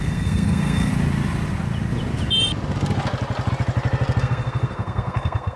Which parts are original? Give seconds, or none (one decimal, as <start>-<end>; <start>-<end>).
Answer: 0.9-4.2